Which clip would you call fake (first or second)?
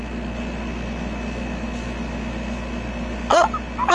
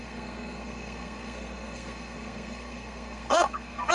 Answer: second